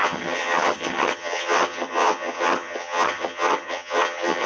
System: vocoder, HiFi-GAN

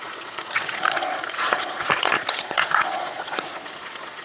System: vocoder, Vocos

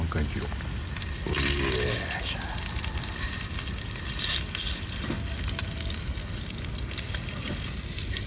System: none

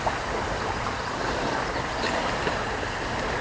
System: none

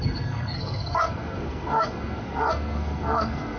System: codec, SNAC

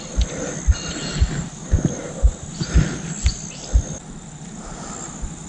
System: none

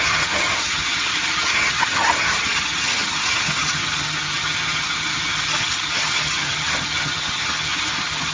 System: vocoder, HiFi-GAN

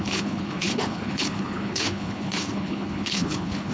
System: codec, HILCodec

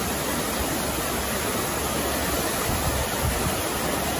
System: none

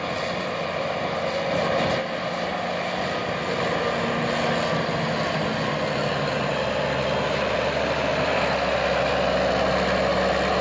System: none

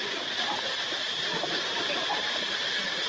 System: none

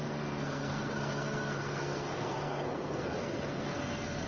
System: codec, SNAC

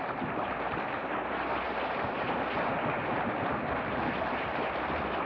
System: none